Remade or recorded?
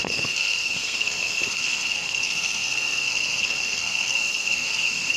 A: remade